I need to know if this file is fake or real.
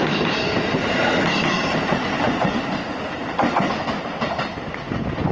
real